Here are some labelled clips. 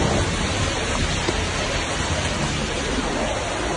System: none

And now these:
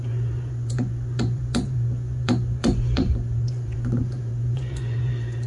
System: vocoder, Vocos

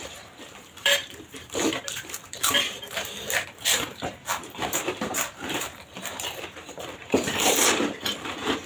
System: vocoder, BigVGAN v2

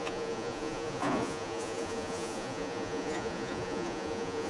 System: vocoder, Vocos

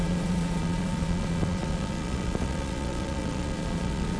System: vocoder, Vocos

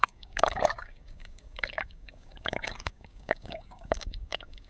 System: codec, DAC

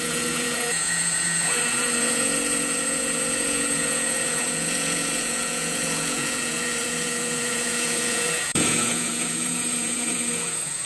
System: vocoder, Vocos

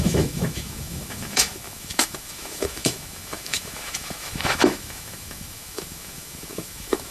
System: autoencoder, DAC-VAE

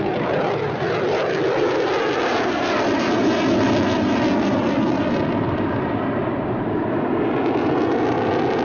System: none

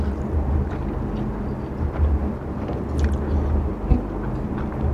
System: none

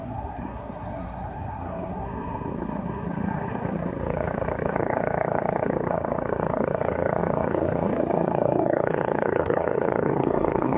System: codec, SNAC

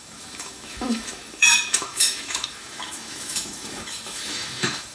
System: autoencoder, DAC-VAE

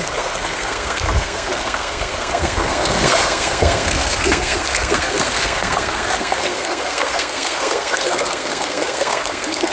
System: codec, SNAC